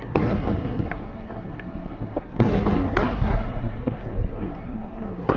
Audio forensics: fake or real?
fake